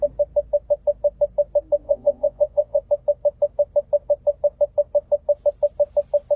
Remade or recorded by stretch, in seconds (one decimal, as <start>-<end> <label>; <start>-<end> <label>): 0.0-1.8 recorded; 1.8-2.8 remade; 2.8-6.4 recorded